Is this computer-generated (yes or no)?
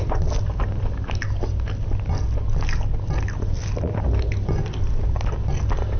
no